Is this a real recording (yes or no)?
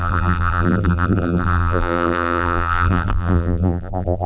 no